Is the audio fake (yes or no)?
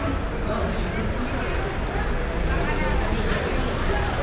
no